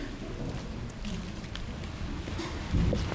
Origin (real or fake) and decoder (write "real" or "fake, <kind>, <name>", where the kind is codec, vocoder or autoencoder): real